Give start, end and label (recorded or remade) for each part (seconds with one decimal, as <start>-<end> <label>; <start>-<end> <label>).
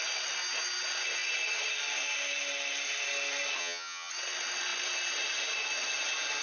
0.0-3.6 recorded; 3.6-4.1 remade; 4.1-6.4 recorded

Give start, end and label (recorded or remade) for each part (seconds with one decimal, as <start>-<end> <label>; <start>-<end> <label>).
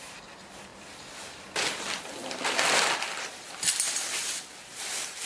0.0-0.7 recorded; 0.7-3.9 remade; 3.9-4.7 recorded; 4.7-5.3 remade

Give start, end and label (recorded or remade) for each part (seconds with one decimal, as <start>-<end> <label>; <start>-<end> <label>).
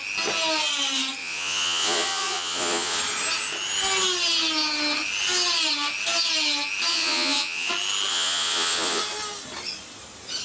0.0-1.2 recorded; 1.2-3.0 remade; 3.0-6.9 recorded; 6.9-7.7 remade; 7.7-8.1 recorded; 8.1-9.0 remade; 9.0-10.4 recorded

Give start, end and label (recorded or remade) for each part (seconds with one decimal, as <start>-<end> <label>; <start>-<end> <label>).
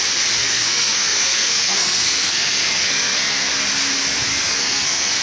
0.0-0.4 recorded; 0.4-3.5 remade; 3.5-4.3 recorded; 4.3-5.2 remade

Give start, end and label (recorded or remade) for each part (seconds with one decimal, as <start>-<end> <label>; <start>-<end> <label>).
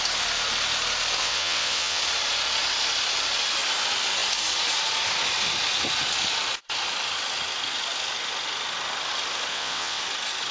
0.0-1.2 recorded; 1.2-2.0 remade; 2.0-9.5 recorded; 9.5-10.0 remade; 10.0-10.5 recorded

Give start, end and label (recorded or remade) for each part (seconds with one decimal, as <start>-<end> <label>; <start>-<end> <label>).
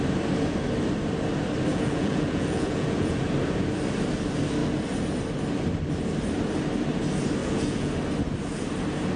0.0-1.7 recorded; 1.7-3.2 remade; 3.2-7.4 recorded; 7.4-7.9 remade; 7.9-9.2 recorded